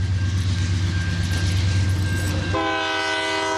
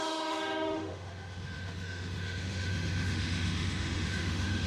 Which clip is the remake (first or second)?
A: second